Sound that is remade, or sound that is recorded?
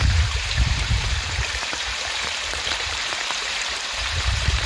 remade